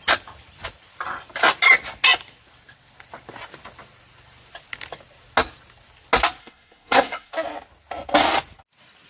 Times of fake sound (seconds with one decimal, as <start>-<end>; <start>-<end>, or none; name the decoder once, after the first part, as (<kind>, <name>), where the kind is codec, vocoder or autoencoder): 6.4-7.3 (codec, SNAC)